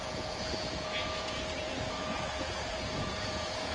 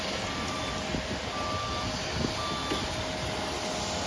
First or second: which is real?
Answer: second